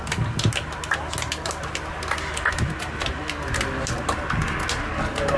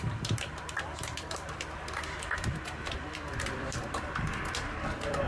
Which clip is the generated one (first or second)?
second